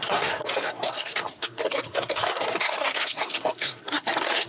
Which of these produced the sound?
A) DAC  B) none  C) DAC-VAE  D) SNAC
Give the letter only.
D